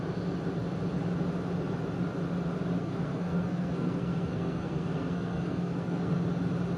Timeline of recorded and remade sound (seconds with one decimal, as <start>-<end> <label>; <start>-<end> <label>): 0.0-2.8 recorded; 2.8-6.1 remade; 6.1-6.8 recorded